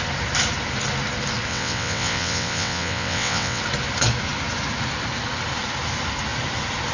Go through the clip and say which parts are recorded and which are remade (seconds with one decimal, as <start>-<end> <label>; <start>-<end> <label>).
0.0-1.5 recorded; 1.5-3.6 remade; 3.6-6.9 recorded